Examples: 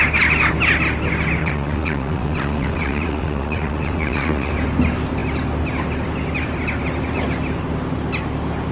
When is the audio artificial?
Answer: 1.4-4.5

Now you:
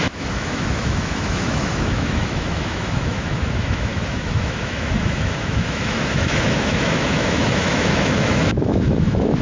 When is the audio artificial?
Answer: 0.0-9.4

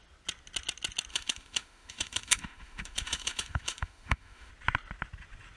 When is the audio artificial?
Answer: 1.1-4.5

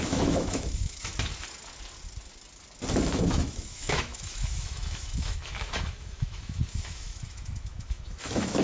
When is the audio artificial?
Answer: 0.0-1.1; 3.1-8.6

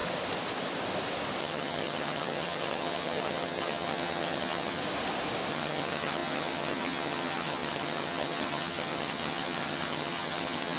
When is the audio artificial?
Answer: 1.4-4.8; 5.5-10.8

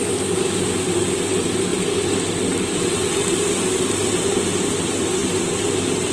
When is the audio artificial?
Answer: 0.0-5.2

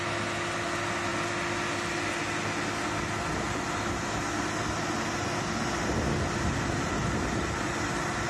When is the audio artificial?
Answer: none

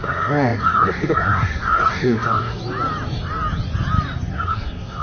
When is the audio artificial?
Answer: 0.0-2.6; 4.3-5.0